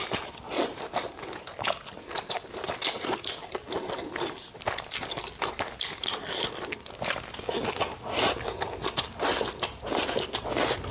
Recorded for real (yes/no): yes